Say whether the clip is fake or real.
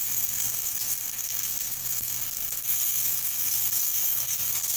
fake